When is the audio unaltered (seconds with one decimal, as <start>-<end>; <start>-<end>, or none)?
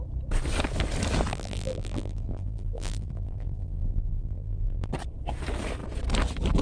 0.0-1.3; 4.9-6.6